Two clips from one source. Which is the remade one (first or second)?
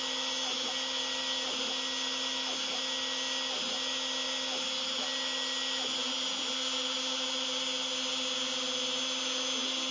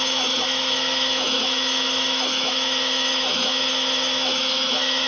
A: second